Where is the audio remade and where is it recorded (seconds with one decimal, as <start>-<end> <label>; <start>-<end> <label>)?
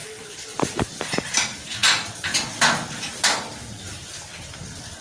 0.0-0.9 remade; 0.9-5.0 recorded